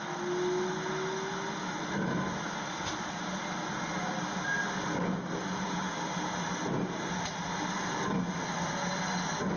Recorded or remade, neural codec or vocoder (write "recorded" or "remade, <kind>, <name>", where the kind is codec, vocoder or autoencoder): recorded